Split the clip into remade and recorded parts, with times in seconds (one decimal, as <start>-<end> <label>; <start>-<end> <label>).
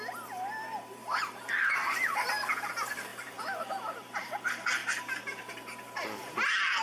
0.0-1.0 recorded; 1.0-2.3 remade; 2.3-3.1 recorded; 3.1-4.3 remade; 4.3-4.8 recorded; 4.8-5.5 remade; 5.5-6.8 recorded